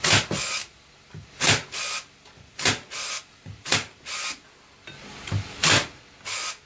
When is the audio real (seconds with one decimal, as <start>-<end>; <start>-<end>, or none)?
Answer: 0.0-6.7